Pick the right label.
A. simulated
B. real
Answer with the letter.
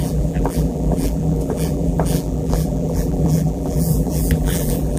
A